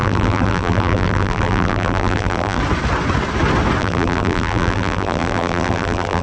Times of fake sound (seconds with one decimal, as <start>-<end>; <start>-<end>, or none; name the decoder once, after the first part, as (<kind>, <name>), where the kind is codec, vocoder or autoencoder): 0.0-2.6 (vocoder, BigVGAN v2); 3.8-6.2